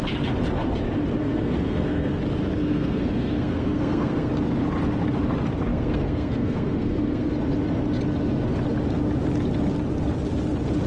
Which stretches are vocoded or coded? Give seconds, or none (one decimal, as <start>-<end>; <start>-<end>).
1.2-2.2; 2.6-4.3; 5.7-7.3